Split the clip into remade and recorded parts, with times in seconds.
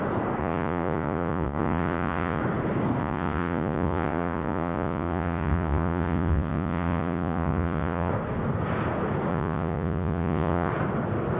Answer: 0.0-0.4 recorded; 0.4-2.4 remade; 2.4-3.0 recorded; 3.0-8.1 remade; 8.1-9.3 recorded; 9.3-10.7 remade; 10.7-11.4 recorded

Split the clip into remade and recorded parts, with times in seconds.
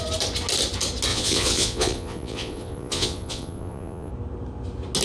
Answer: 0.0-1.1 recorded; 1.1-4.1 remade; 4.1-5.0 recorded